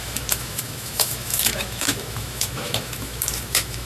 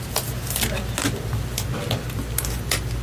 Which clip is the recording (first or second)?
second